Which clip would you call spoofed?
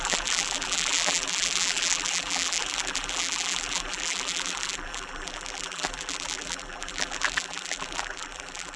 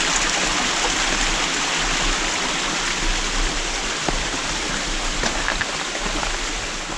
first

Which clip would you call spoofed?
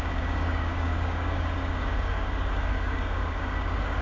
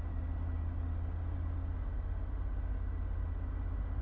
first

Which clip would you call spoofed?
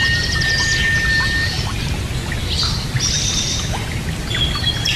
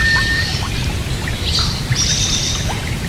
second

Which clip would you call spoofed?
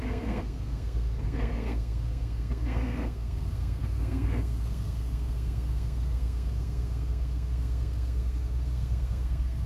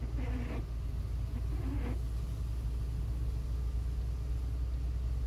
first